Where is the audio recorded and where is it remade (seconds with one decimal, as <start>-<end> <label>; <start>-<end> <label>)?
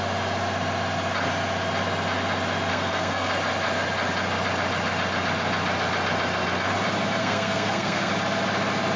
0.0-2.7 recorded; 2.7-3.3 remade; 3.3-7.2 recorded; 7.2-8.1 remade; 8.1-9.0 recorded